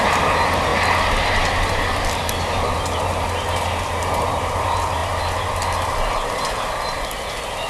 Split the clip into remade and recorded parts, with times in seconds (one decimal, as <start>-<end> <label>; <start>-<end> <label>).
0.0-7.7 recorded